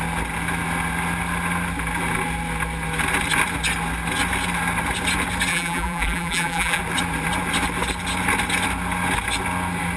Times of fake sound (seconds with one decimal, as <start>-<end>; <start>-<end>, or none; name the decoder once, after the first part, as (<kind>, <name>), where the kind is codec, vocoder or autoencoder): 5.5-6.8 (vocoder, BigVGAN v2)